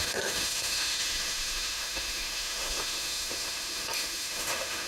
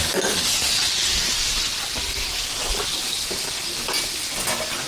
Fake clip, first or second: first